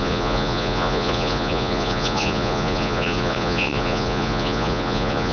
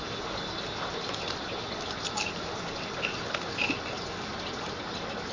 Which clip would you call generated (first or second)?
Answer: first